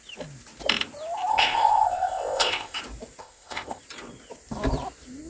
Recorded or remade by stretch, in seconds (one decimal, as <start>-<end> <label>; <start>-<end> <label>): 0.0-1.3 recorded; 1.3-2.8 remade; 2.8-3.2 recorded; 3.2-3.8 remade; 3.8-5.3 recorded